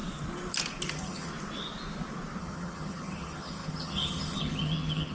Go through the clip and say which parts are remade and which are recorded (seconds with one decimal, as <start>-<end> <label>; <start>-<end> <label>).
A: 0.0-0.9 recorded; 0.9-1.3 remade; 1.3-2.4 recorded; 2.4-5.1 remade

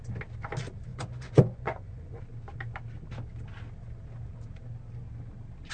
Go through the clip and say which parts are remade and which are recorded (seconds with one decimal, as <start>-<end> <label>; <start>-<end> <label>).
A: 0.0-0.9 recorded; 0.9-2.2 remade; 2.2-5.7 recorded

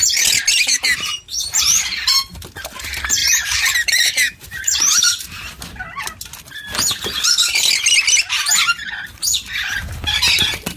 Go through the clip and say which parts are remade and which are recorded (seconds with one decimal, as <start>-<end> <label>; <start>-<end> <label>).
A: 0.0-0.5 recorded; 0.5-2.2 remade; 2.2-3.2 recorded; 3.2-5.0 remade; 5.0-10.8 recorded

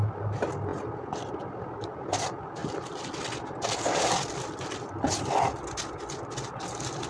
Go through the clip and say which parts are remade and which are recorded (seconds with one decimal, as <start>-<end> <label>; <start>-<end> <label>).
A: 0.0-7.1 recorded

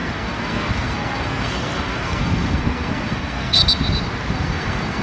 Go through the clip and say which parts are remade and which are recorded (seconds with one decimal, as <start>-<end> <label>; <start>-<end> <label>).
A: 0.0-3.6 remade; 3.6-4.3 recorded; 4.3-5.0 remade

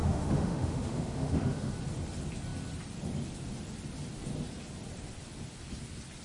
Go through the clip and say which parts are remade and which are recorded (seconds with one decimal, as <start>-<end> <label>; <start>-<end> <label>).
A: 0.0-1.7 remade; 1.7-6.2 recorded